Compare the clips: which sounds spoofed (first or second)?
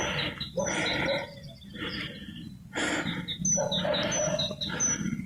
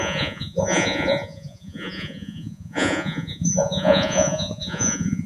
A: second